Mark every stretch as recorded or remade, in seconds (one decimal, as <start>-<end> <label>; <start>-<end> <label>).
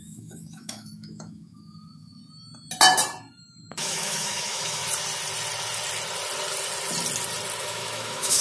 0.0-2.2 remade; 2.2-3.4 recorded; 3.4-4.8 remade; 4.8-7.6 recorded; 7.6-8.4 remade